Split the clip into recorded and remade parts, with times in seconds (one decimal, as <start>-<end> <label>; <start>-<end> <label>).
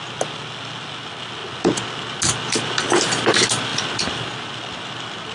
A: 0.0-5.3 recorded